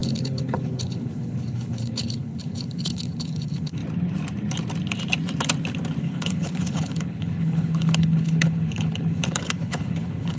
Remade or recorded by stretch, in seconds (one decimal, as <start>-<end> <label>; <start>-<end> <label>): 0.0-3.8 remade; 3.8-6.0 recorded; 6.0-10.4 remade